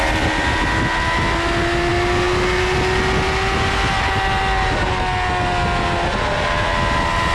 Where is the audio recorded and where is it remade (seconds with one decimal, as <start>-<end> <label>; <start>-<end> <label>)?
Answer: 0.0-7.3 recorded